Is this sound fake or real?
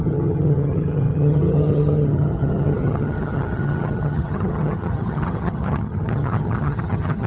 fake